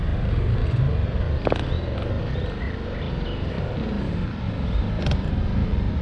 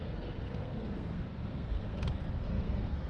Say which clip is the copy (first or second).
second